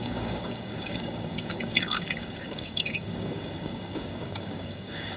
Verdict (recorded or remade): remade